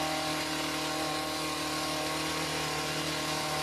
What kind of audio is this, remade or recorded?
recorded